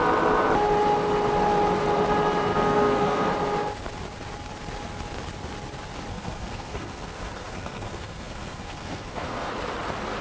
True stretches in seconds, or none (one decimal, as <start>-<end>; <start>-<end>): 0.0-2.5; 3.3-6.1; 9.5-10.2